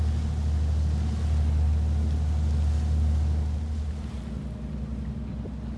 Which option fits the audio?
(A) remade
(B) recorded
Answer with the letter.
B